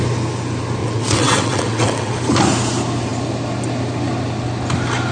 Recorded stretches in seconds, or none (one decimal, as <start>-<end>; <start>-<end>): 0.0-0.8; 2.1-5.1